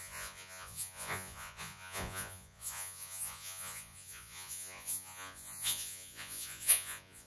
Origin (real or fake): fake